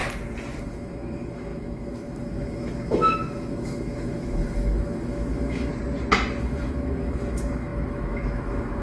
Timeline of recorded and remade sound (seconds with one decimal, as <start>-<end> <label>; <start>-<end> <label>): 0.0-0.6 recorded; 0.6-5.7 remade; 5.7-6.4 recorded; 6.4-8.8 remade